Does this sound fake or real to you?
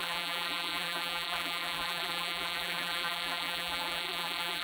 fake